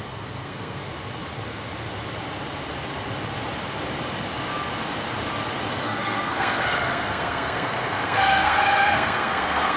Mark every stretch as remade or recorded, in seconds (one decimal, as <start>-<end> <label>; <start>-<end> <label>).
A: 0.0-0.8 remade; 0.8-5.7 recorded; 5.7-9.8 remade